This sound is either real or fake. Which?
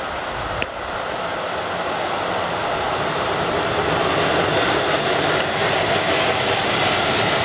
real